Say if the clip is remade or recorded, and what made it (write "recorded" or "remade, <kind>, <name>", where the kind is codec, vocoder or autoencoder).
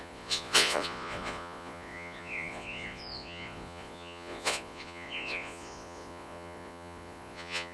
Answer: remade, vocoder, Vocos